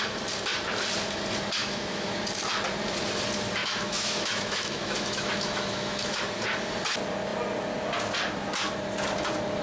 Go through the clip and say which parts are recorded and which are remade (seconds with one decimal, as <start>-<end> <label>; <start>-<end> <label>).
0.0-1.6 recorded; 1.6-2.2 remade; 2.2-3.6 recorded; 3.6-6.2 remade; 6.2-9.6 recorded

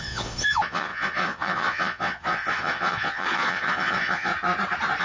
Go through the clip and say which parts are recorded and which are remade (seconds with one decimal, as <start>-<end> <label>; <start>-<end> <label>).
0.0-4.3 remade; 4.3-5.0 recorded

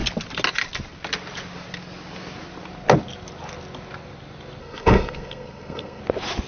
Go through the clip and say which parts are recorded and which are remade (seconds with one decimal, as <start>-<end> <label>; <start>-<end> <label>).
0.0-4.6 recorded; 4.6-6.0 remade; 6.0-6.5 recorded